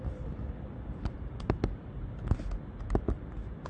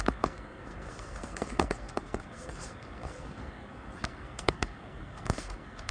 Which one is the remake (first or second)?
second